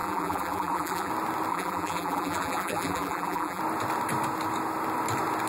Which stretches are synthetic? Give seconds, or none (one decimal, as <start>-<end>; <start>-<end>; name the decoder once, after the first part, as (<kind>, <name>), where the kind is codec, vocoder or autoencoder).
0.0-1.1 (vocoder, BigVGAN v2); 1.5-3.6